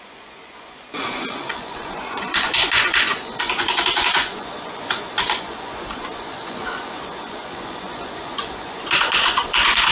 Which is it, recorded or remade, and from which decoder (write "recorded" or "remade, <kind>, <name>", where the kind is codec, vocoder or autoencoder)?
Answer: remade, vocoder, Vocos